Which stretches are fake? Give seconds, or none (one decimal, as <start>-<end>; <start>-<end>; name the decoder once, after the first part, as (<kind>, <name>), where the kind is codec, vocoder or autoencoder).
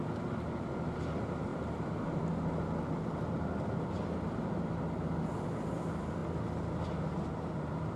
1.5-2.2 (vocoder, BigVGAN v2)